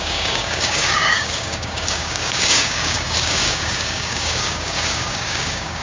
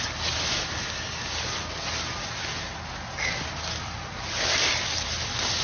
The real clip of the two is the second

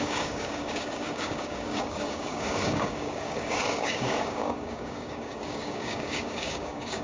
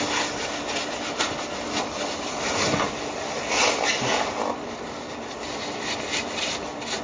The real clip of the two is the second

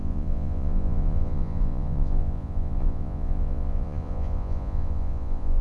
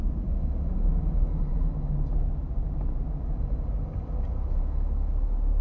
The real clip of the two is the second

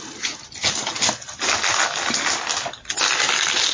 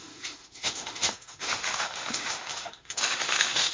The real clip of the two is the first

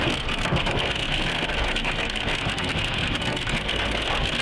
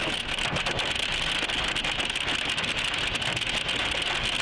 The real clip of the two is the second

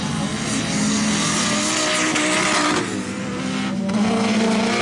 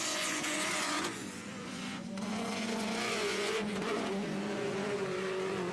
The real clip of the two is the first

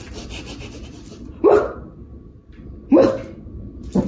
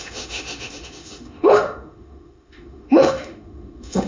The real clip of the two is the first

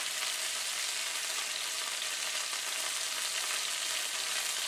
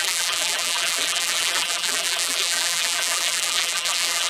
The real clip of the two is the first